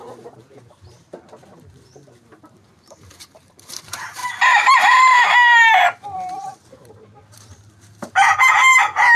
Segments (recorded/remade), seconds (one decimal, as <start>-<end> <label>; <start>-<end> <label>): 0.0-9.2 remade